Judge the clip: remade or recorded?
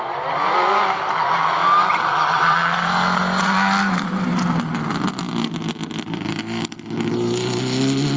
recorded